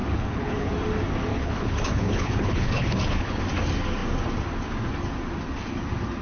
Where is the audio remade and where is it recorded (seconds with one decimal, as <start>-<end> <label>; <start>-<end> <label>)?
0.0-0.7 remade; 0.7-1.3 recorded; 1.3-3.4 remade; 3.4-6.2 recorded